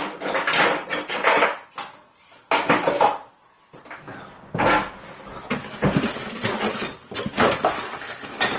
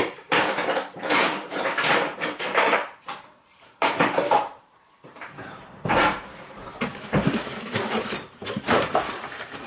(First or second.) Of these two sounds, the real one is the first